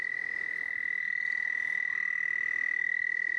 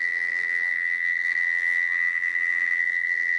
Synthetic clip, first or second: second